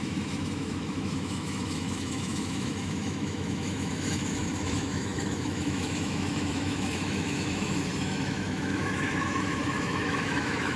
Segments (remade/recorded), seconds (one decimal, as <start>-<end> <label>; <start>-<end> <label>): 0.0-10.8 remade